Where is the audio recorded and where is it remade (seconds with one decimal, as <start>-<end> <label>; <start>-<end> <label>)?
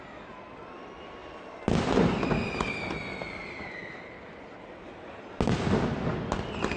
0.0-6.8 recorded